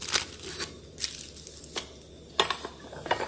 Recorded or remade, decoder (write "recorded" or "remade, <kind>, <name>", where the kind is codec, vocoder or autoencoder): recorded